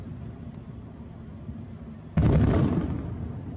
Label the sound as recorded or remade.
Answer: recorded